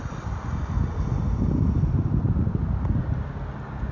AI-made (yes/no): no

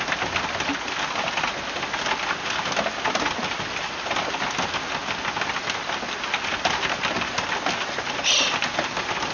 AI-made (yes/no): no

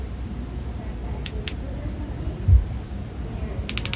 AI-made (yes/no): no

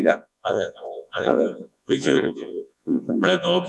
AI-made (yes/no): yes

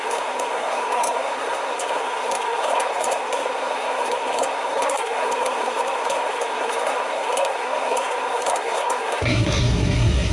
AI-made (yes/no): yes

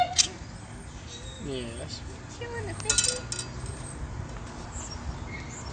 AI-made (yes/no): no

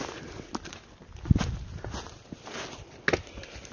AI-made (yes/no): no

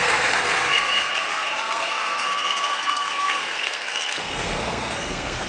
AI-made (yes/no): yes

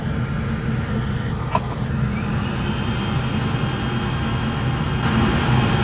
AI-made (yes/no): no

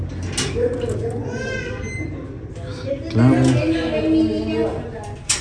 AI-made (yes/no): no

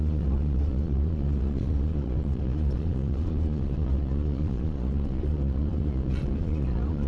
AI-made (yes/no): yes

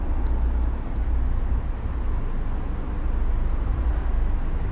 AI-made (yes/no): no